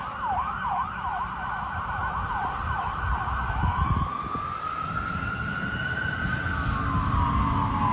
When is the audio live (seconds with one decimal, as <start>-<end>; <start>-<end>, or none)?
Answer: 0.0-7.9